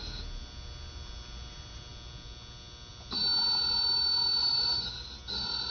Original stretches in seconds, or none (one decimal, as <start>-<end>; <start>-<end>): 0.0-4.4; 4.9-5.7

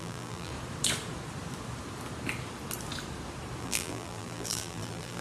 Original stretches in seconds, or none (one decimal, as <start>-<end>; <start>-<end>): 0.5-3.6